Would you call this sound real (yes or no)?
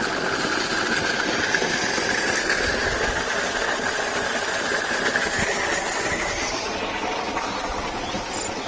yes